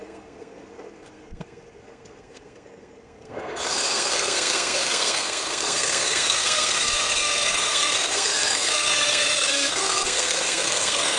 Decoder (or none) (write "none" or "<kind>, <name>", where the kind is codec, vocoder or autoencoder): codec, SNAC